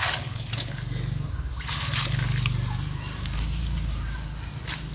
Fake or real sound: real